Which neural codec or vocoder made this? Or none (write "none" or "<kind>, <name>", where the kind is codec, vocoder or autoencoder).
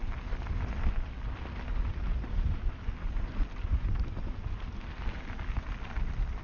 none